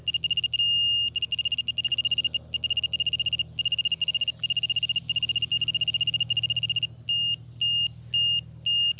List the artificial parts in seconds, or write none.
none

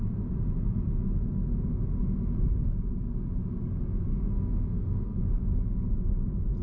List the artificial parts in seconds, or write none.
4.1-5.2 (codec, SNAC)

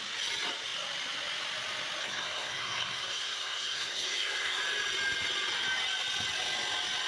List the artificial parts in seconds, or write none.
2.0-4.6 (codec, SNAC)